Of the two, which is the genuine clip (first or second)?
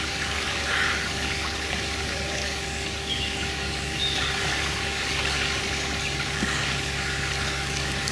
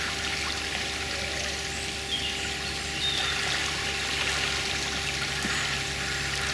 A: second